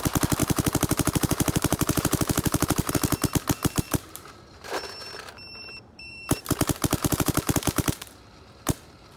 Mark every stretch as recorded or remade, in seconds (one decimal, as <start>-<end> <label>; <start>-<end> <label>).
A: 0.0-0.4 recorded; 0.4-2.9 remade; 2.9-3.6 recorded; 3.6-8.2 remade; 8.2-9.2 recorded